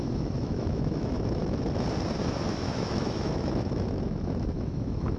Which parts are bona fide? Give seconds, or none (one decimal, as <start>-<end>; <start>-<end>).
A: 1.4-2.2